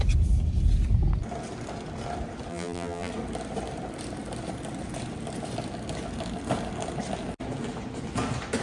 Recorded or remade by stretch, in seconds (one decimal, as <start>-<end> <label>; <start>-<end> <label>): 0.0-2.5 recorded; 2.5-3.1 remade; 3.1-8.6 recorded